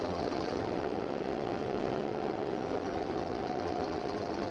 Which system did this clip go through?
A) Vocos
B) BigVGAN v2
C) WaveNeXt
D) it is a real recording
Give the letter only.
C